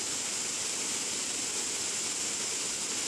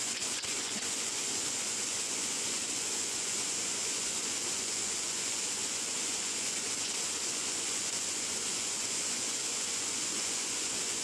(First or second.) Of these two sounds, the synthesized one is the second